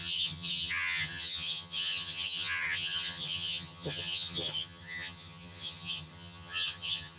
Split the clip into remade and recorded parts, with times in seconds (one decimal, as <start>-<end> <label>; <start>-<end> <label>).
0.0-7.2 remade